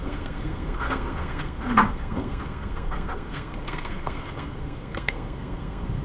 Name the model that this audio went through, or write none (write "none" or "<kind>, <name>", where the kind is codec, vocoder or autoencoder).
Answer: codec, SNAC